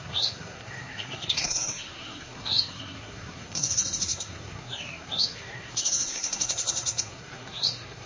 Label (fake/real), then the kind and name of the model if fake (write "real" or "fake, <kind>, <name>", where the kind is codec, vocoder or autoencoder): fake, codec, SNAC